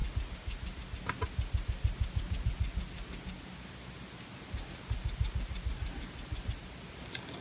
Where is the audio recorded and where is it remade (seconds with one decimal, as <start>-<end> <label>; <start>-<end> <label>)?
0.0-7.4 recorded